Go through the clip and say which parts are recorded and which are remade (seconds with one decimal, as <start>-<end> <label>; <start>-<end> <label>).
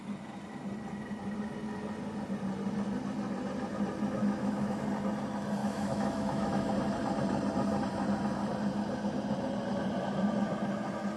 0.0-4.2 recorded; 4.2-4.8 remade; 4.8-5.6 recorded; 5.6-6.7 remade; 6.7-11.2 recorded